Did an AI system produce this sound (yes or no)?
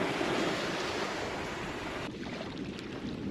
no